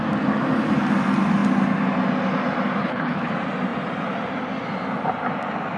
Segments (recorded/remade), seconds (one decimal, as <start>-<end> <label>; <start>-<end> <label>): 0.0-2.8 recorded; 2.8-3.3 remade; 3.3-5.8 recorded